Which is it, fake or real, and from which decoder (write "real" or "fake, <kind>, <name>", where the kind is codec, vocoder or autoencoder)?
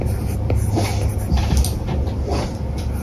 real